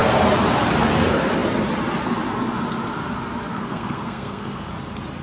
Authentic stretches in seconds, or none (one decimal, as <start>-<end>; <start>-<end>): 0.0-3.5; 4.7-5.2